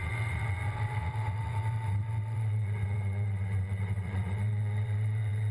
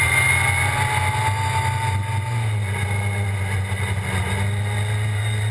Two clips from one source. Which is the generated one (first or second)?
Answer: first